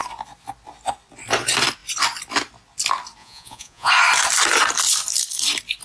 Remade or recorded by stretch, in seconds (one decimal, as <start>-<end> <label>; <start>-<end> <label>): 0.0-3.2 recorded; 3.2-3.9 remade; 3.9-5.8 recorded